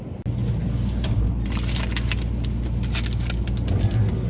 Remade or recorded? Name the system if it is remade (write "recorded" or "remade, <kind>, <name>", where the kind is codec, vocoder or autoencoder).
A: recorded